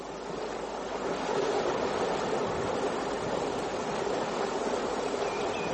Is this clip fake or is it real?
real